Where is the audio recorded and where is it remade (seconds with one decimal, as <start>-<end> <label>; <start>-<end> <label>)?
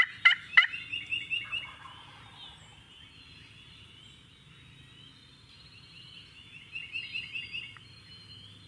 0.0-8.7 recorded